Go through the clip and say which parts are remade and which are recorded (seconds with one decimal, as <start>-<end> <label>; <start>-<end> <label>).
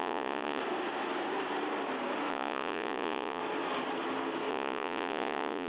0.0-0.6 remade; 0.6-2.3 recorded; 2.3-3.4 remade; 3.4-4.5 recorded; 4.5-5.7 remade